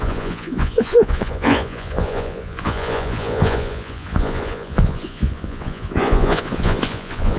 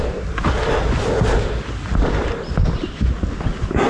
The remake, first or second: first